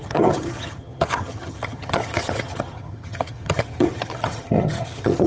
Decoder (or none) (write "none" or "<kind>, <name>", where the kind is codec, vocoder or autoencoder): vocoder, HiFi-GAN